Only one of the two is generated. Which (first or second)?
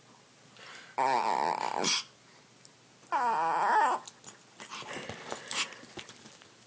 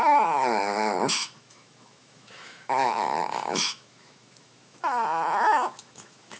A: second